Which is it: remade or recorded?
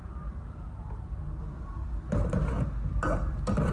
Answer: recorded